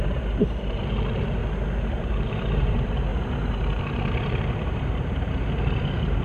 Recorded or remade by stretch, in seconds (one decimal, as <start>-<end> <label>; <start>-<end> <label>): 0.0-1.4 remade; 1.4-1.9 recorded; 1.9-3.1 remade; 3.1-3.8 recorded; 3.8-6.2 remade